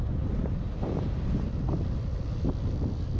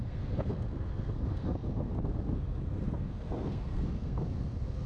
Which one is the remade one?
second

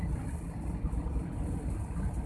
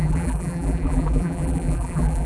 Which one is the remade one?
second